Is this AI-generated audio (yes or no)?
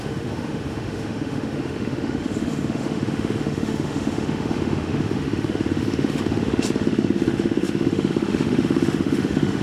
yes